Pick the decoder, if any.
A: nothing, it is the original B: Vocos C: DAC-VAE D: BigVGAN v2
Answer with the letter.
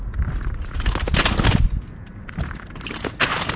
A